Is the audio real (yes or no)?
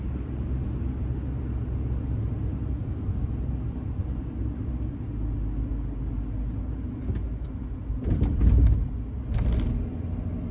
yes